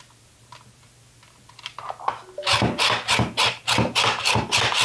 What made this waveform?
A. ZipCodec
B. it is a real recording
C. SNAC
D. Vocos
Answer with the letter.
B